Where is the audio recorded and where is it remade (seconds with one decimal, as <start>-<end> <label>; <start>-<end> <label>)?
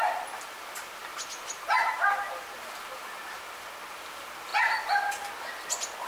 0.0-6.1 recorded